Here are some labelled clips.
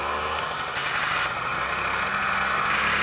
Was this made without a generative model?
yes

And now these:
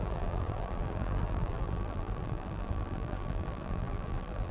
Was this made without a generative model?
no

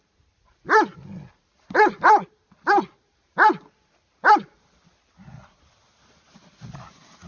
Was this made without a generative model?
yes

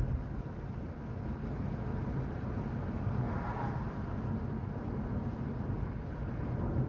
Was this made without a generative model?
yes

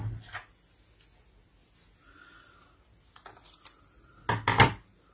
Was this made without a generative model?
yes